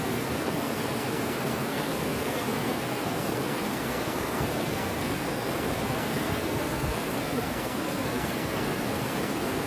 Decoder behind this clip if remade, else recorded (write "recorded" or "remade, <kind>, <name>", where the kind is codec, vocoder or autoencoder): remade, codec, SNAC